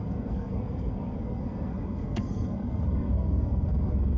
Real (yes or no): no